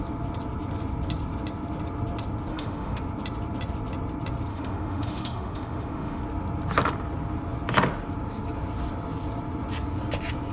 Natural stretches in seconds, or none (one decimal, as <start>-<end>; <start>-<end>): 0.0-2.5; 3.0-4.5; 6.2-10.5